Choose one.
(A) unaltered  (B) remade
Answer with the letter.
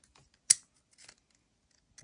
A